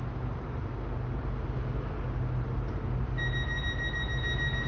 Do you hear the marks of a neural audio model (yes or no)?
no